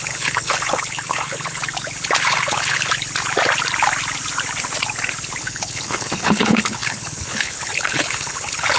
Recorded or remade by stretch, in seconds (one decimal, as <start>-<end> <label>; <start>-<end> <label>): 0.0-1.6 remade; 1.6-2.3 recorded; 2.3-2.9 remade; 2.9-5.4 recorded; 5.4-8.8 remade